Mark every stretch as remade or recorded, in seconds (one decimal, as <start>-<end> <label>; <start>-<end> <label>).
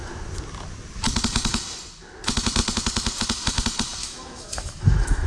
0.0-4.0 recorded; 4.0-5.3 remade